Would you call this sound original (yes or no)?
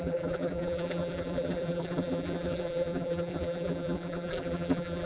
no